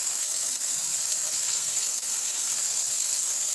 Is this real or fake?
fake